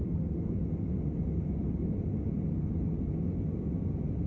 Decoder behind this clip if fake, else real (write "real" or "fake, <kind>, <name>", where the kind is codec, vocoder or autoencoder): real